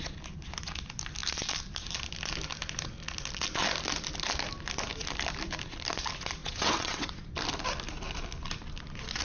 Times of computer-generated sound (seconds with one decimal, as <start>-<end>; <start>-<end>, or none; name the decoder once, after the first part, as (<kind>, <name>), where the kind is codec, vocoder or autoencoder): 6.4-7.1 (vocoder, WaveNeXt)